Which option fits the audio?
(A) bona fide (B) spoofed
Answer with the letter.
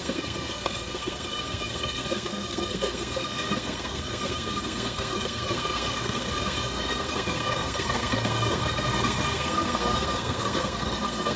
B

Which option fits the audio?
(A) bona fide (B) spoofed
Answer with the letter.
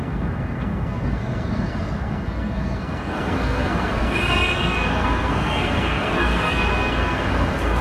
B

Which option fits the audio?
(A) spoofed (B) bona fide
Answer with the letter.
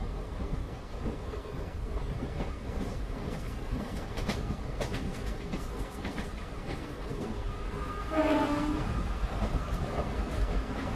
A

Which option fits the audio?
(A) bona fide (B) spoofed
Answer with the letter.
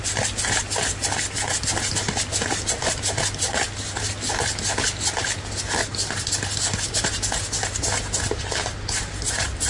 A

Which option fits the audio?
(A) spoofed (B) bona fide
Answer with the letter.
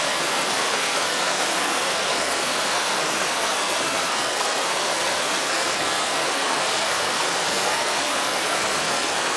A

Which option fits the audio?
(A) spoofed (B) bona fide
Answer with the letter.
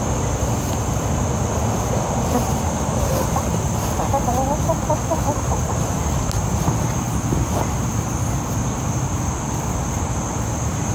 B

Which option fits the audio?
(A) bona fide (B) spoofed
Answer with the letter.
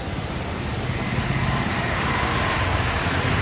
A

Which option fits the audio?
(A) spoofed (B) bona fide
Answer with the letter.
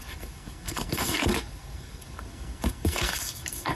A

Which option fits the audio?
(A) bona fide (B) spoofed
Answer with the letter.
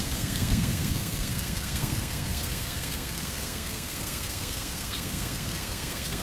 B